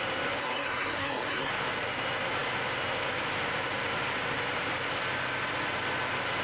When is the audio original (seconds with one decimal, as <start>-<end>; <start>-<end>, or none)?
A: 0.0-0.4; 1.5-6.4